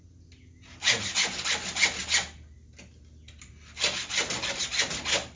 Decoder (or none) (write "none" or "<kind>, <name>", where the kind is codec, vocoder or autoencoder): none